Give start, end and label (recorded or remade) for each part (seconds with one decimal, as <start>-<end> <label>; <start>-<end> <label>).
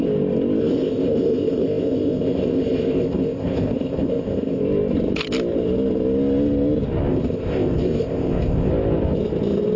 0.0-0.6 recorded; 0.6-4.6 remade; 4.6-7.1 recorded; 7.1-8.7 remade; 8.7-9.8 recorded